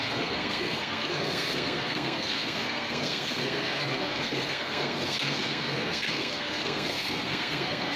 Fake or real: fake